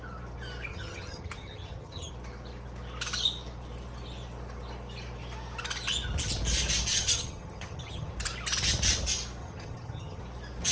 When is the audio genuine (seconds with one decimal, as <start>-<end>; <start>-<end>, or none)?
0.0-0.7; 2.1-6.9; 8.1-9.4; 10.2-10.7

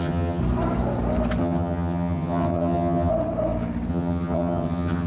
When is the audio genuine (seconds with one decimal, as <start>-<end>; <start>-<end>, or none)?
0.4-1.4; 3.1-3.9